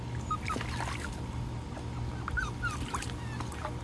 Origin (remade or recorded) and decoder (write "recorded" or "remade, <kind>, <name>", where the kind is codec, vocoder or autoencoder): recorded